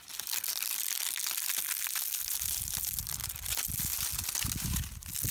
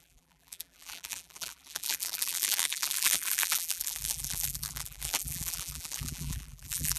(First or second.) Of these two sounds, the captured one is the first